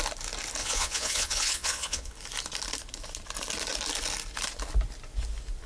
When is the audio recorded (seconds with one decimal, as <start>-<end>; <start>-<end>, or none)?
0.0-0.6; 2.1-5.7